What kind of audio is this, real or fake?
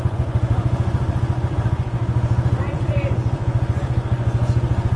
fake